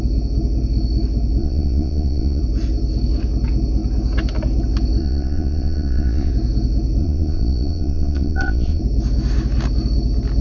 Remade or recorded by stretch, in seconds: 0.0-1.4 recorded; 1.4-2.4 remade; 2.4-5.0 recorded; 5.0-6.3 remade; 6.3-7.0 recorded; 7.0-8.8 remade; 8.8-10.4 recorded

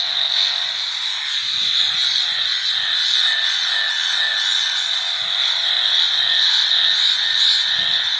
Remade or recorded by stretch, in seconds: 0.0-8.2 recorded

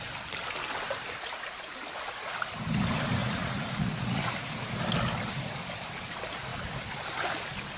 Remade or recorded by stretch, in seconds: 0.0-3.2 recorded; 3.2-4.3 remade; 4.3-7.8 recorded

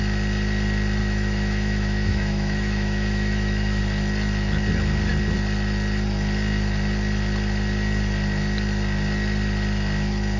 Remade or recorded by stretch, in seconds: 0.0-1.0 recorded; 1.0-3.8 remade; 3.8-10.4 recorded

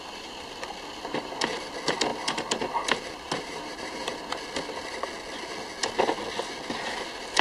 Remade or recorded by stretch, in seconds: 0.0-2.1 recorded; 2.1-4.3 remade; 4.3-7.4 recorded